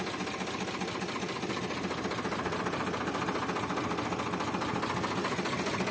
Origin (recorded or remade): recorded